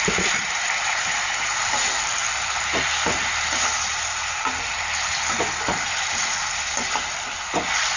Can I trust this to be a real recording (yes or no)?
yes